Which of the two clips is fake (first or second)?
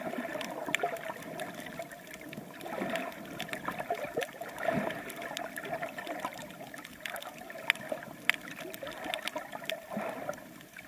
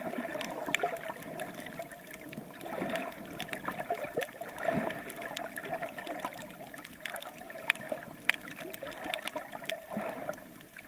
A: second